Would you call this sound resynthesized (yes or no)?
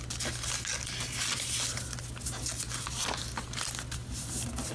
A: no